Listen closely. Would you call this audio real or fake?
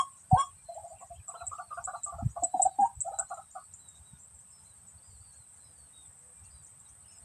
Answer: real